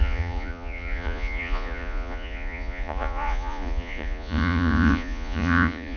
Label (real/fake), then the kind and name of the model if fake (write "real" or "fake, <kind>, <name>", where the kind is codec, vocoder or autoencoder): fake, vocoder, Vocos